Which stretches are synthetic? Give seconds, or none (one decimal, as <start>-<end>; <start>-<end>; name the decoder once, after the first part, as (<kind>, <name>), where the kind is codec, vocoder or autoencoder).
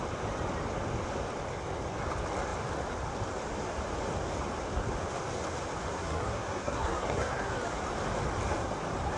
5.9-7.5 (codec, SNAC)